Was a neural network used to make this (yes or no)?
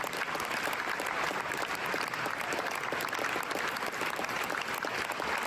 no